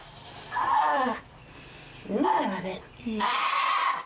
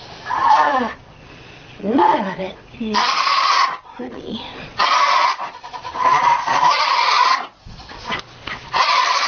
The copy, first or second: second